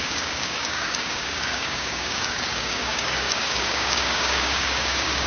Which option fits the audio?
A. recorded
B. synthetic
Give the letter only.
B